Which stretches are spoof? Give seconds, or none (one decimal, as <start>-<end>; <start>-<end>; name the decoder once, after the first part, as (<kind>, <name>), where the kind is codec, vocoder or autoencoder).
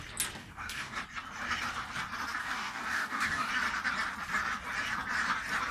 0.4-1.0 (codec, DAC); 2.4-3.5